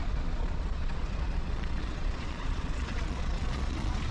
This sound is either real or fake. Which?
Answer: fake